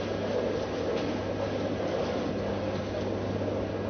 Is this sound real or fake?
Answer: real